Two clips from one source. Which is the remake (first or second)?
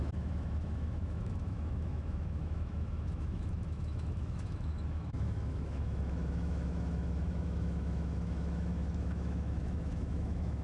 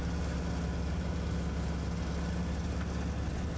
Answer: first